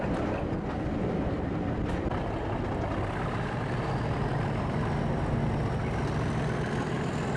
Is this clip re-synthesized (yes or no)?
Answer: no